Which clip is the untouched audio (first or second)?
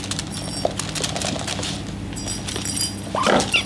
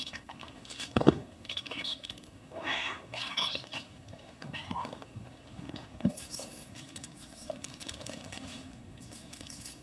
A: first